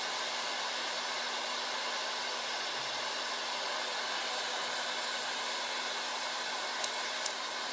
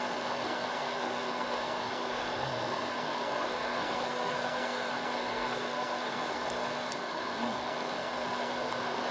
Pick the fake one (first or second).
second